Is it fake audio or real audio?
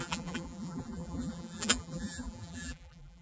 fake